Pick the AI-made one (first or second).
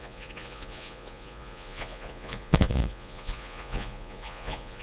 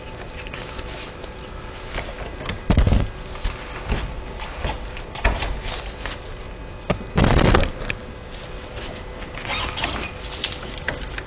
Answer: first